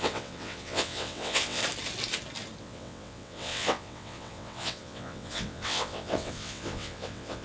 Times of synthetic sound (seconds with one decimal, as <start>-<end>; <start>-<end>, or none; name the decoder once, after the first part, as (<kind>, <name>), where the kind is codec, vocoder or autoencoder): 0.0-1.6 (vocoder, WaveNeXt); 2.6-7.4